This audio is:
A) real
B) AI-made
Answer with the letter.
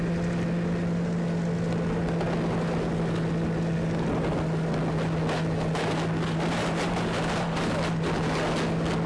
A